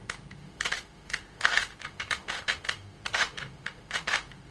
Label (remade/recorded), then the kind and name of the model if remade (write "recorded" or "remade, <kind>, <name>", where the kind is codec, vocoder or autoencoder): remade, autoencoder, DAC-VAE